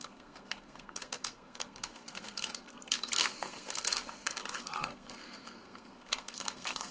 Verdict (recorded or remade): remade